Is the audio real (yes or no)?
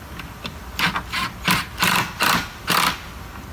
yes